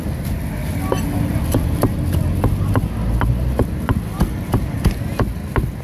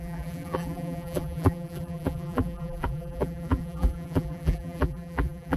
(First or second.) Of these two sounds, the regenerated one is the second